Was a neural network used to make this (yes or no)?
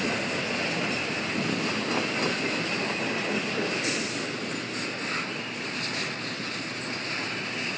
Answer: no